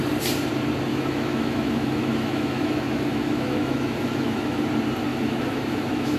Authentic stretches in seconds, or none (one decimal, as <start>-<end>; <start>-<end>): 0.0-0.9; 4.6-5.1